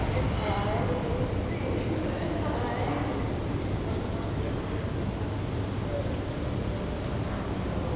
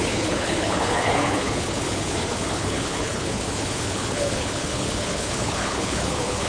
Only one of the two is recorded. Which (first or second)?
first